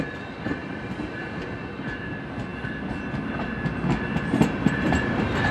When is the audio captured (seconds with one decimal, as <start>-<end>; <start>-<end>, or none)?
0.0-0.6; 1.3-5.5